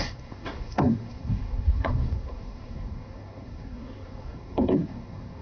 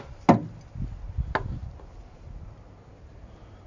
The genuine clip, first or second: second